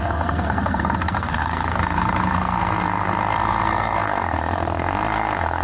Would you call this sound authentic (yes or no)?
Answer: no